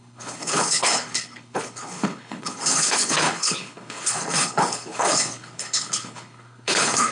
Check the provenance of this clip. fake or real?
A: fake